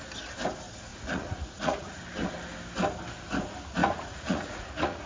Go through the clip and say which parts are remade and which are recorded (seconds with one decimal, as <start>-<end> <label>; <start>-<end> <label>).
0.0-0.9 recorded; 0.9-2.0 remade; 2.0-3.8 recorded; 3.8-5.1 remade